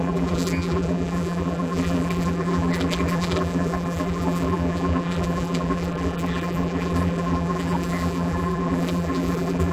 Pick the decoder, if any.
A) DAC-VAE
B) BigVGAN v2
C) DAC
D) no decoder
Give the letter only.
B